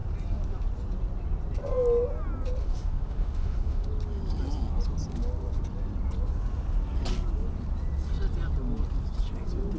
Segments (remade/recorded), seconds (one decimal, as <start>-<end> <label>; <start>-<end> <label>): 0.0-2.6 recorded; 2.6-3.9 remade; 3.9-9.8 recorded